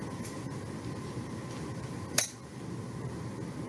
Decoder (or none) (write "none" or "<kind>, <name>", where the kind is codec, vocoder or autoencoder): none